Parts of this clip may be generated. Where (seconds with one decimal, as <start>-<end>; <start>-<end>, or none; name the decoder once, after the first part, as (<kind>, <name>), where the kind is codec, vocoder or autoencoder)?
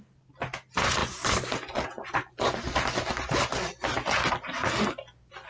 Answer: none